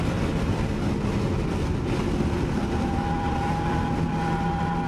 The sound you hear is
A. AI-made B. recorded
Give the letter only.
B